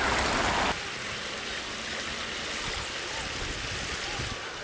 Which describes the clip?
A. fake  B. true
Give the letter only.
B